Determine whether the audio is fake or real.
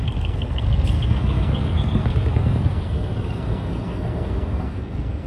fake